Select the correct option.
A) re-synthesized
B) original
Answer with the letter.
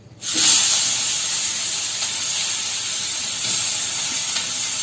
B